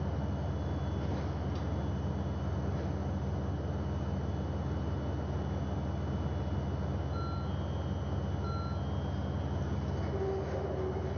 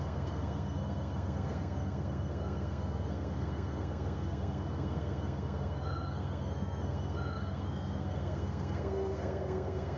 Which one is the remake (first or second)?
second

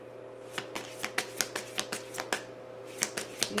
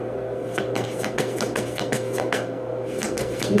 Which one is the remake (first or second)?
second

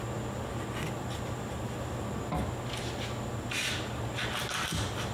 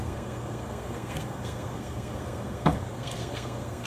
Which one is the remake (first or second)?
second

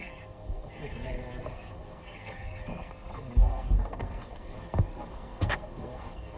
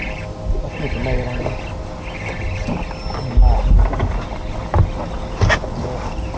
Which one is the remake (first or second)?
first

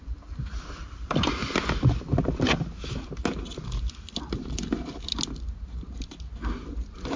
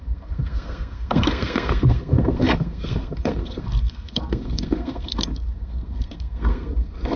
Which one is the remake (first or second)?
second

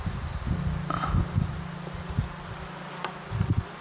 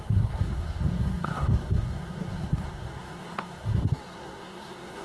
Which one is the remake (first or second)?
second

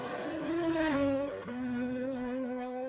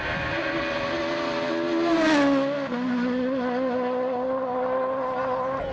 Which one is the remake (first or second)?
first